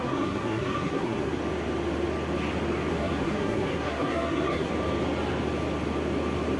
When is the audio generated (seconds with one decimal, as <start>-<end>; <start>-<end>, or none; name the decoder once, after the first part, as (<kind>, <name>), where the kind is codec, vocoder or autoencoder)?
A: 0.0-1.4 (codec, SNAC); 2.9-4.7